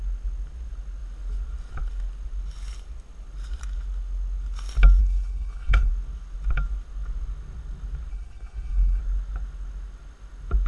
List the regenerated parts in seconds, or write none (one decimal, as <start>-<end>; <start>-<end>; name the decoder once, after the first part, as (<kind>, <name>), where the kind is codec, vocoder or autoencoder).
5.0-5.9 (codec, HILCodec); 8.1-9.0